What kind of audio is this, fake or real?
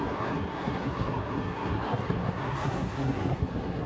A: fake